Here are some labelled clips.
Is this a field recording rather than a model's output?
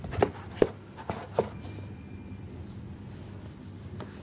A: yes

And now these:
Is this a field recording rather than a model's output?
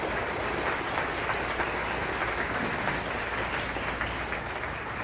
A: yes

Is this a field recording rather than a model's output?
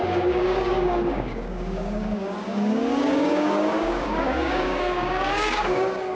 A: no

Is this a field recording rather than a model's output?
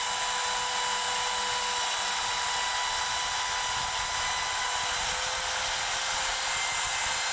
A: yes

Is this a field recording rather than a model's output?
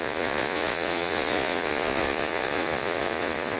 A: no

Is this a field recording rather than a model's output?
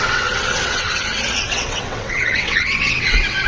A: no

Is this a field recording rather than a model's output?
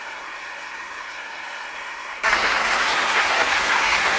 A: no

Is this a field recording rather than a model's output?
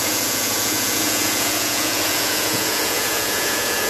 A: no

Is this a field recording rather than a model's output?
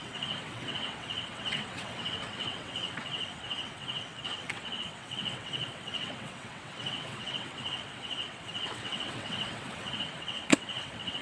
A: no